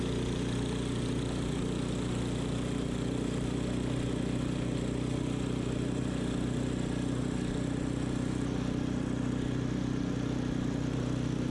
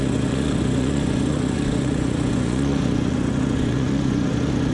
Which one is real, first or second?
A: first